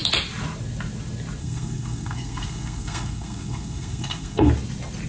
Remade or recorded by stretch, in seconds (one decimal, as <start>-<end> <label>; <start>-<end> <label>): 0.0-1.4 recorded; 1.4-4.5 remade; 4.5-5.1 recorded